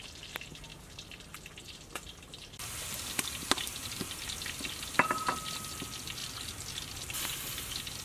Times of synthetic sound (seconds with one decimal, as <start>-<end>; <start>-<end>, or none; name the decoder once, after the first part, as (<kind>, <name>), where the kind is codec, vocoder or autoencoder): 0.7-4.1 (vocoder, BigVGAN v2); 6.2-8.0